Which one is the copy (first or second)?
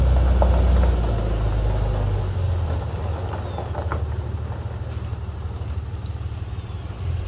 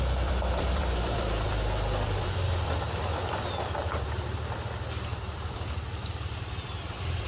second